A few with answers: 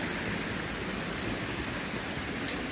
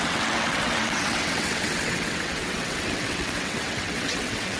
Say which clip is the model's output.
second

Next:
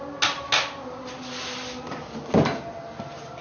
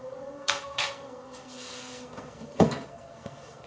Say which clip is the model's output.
second